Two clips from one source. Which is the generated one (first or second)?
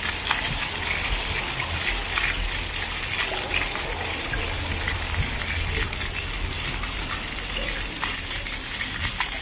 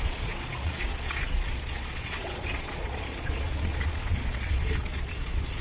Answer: second